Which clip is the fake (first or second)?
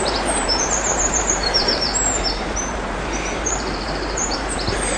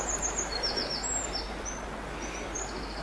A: first